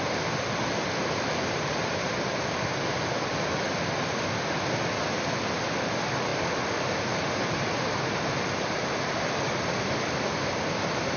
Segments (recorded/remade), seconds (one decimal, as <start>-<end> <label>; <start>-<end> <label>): 0.0-11.2 recorded